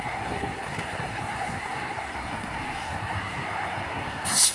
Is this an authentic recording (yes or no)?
no